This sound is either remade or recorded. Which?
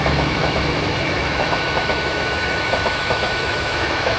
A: remade